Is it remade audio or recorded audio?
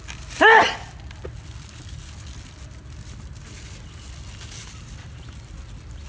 recorded